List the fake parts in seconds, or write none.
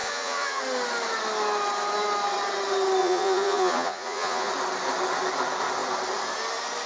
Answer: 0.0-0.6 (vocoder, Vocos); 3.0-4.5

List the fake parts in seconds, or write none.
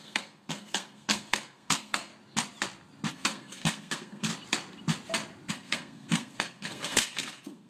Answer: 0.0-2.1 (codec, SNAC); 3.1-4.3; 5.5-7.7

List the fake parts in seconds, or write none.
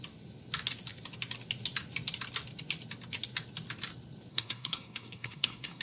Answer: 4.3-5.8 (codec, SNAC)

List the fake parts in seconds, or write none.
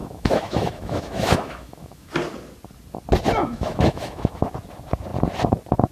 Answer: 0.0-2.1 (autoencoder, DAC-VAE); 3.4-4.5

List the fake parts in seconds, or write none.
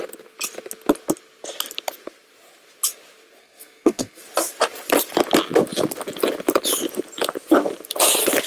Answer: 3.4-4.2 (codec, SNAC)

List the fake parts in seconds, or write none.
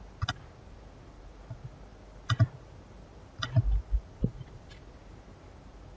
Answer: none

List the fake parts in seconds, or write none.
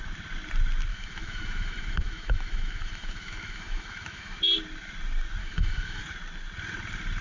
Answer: 0.9-4.4 (autoencoder, DAC-VAE); 5.4-6.0